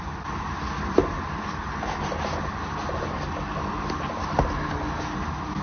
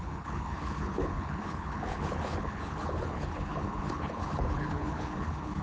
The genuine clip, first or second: first